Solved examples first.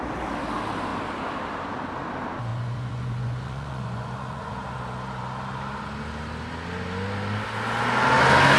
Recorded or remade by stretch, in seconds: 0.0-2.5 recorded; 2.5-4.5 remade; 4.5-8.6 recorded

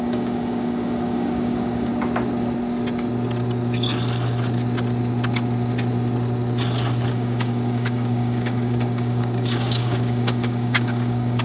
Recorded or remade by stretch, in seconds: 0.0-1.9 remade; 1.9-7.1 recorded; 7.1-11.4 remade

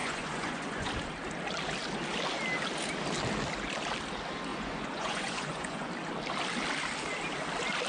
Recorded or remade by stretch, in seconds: 0.0-0.9 remade; 0.9-4.5 recorded; 4.5-5.9 remade; 5.9-7.9 recorded

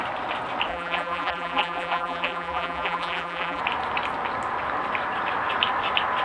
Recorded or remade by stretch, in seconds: 0.0-0.7 recorded; 0.7-3.6 remade; 3.6-6.2 recorded